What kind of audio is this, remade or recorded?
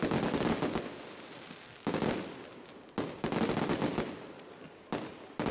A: recorded